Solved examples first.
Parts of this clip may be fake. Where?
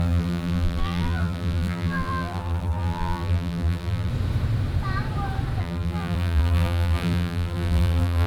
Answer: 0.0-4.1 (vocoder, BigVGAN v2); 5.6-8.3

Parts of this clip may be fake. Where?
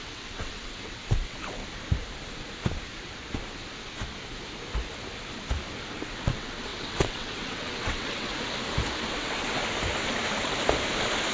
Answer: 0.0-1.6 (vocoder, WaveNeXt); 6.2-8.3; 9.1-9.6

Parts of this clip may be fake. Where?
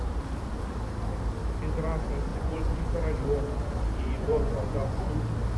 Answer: 2.3-2.9 (vocoder, Vocos); 4.0-5.1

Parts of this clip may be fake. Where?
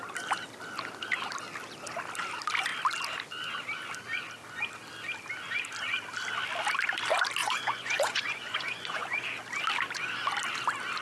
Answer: 7.4-9.3 (vocoder, Vocos)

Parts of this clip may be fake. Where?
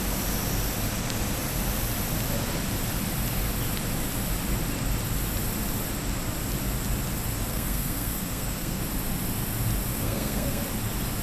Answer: 7.5-8.8 (codec, SNAC); 9.9-10.6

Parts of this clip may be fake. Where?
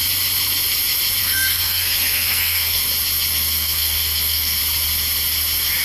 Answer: 1.2-2.8 (codec, SNAC); 3.3-4.6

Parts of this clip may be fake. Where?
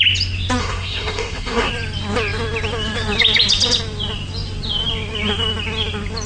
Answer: 0.6-1.7 (codec, SNAC)